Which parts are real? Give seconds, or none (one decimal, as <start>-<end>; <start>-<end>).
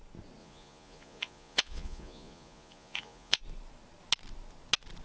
0.0-0.4; 3.4-5.0